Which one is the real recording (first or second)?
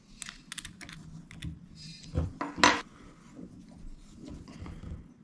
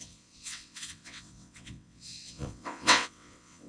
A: first